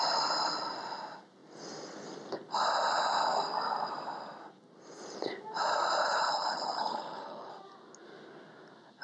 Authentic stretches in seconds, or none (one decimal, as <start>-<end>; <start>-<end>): 0.0-6.0; 7.5-9.0